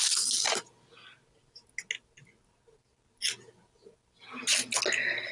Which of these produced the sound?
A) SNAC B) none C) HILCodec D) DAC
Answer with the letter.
B